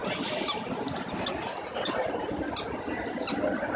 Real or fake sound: real